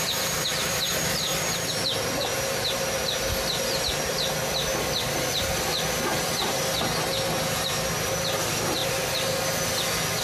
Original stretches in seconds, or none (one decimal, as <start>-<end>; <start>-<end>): 1.3-4.0; 8.8-10.2

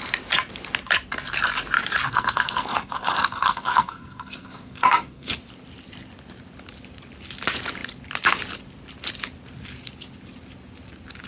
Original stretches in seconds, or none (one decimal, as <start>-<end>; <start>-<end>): 0.0-2.1; 5.3-11.3

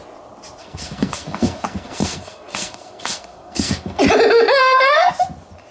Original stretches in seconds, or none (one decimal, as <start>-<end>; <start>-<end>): 0.0-0.6; 4.0-4.6; 5.1-5.7

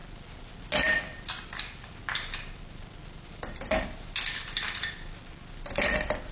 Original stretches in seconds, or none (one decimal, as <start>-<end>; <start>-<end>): 0.0-6.3

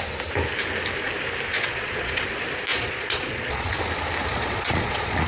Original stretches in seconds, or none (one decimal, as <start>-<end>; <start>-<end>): 0.0-1.5; 2.2-2.7; 3.8-4.3

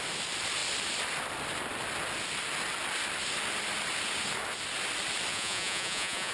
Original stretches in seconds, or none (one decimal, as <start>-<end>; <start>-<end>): 0.0-5.3